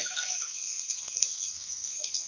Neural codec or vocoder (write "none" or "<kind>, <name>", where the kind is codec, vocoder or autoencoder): codec, SNAC